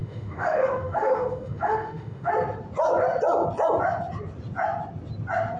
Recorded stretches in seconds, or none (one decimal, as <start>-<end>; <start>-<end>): 2.3-5.6